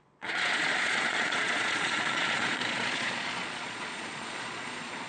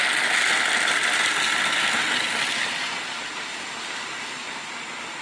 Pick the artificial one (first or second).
first